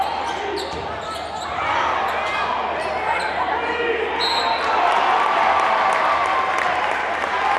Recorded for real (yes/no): yes